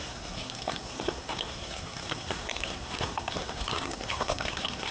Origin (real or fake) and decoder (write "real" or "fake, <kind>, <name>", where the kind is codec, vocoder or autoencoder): fake, codec, SNAC